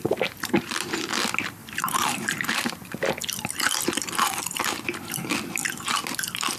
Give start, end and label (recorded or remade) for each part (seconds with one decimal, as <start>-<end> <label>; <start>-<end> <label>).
0.0-0.8 remade; 0.8-1.6 recorded; 1.6-3.1 remade; 3.1-6.6 recorded